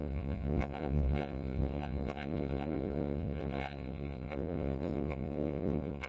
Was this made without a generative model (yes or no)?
no